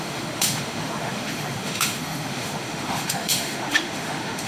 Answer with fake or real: fake